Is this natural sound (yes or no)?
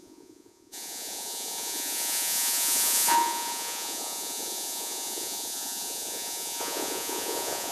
no